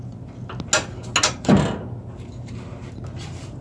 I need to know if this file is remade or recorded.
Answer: recorded